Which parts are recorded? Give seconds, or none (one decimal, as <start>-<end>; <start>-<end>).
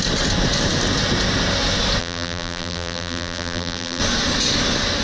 0.0-2.0; 4.0-5.0